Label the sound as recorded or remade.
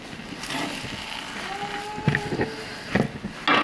recorded